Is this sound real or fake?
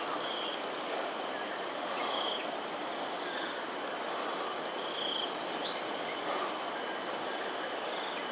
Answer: real